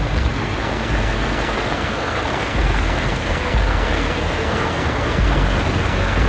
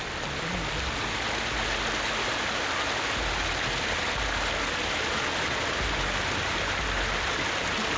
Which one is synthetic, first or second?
first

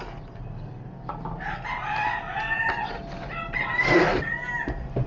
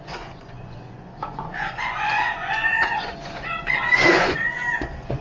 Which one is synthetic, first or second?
second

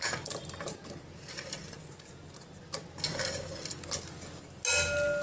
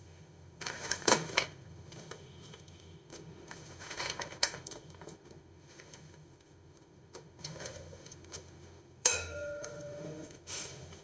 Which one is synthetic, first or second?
second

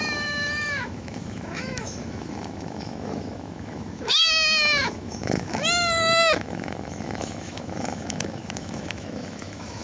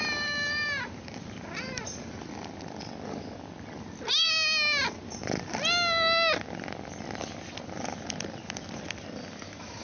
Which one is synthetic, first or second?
first